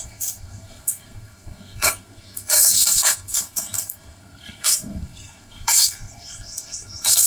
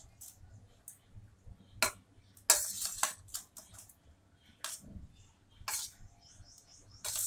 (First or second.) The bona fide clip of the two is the second